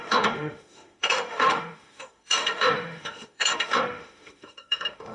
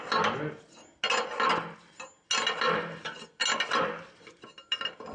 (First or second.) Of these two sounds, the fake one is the first